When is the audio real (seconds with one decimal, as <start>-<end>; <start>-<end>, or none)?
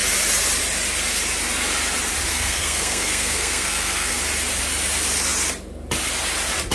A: 0.0-2.3; 4.2-6.7